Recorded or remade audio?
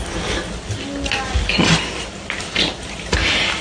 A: recorded